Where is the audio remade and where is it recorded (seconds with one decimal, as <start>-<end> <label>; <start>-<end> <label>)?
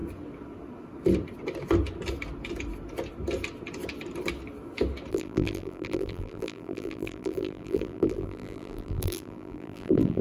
0.0-5.1 recorded; 5.1-10.2 remade